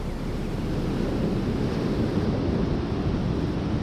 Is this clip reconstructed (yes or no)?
no